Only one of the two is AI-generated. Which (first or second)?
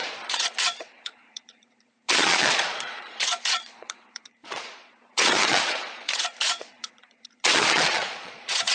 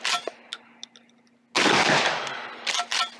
first